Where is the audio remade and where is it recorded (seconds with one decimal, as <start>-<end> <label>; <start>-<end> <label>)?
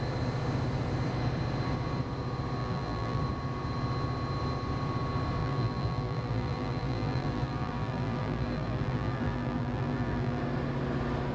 0.0-2.6 recorded; 2.6-3.2 remade; 3.2-5.4 recorded; 5.4-10.4 remade; 10.4-11.3 recorded